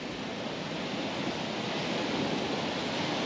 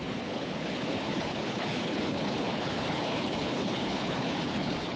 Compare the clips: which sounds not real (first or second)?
second